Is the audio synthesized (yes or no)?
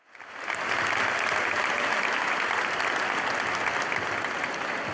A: no